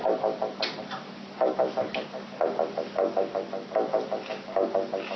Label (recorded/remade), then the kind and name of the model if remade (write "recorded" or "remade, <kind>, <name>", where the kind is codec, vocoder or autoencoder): recorded